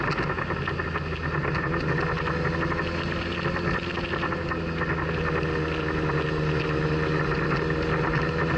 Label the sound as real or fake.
real